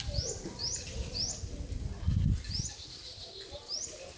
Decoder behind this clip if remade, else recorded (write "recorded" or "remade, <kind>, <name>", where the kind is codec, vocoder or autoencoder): recorded